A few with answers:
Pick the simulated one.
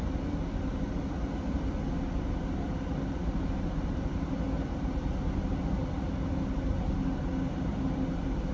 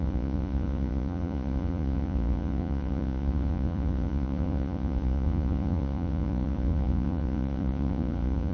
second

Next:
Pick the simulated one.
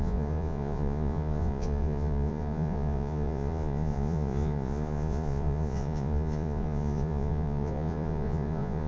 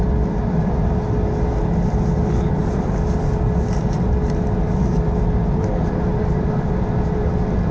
first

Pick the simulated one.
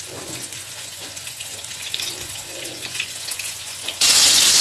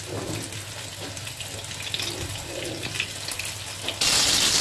first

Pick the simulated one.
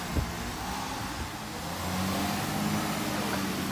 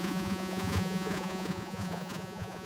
second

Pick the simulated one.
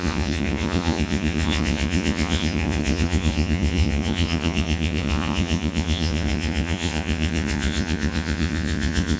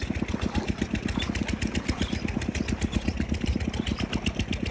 first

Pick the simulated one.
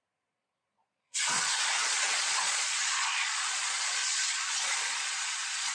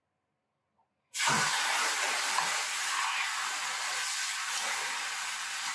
first